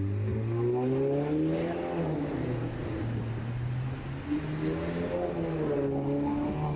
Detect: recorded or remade recorded